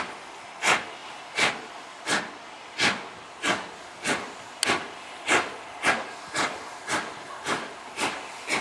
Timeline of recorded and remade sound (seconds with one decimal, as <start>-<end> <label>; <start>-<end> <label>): 0.0-8.6 recorded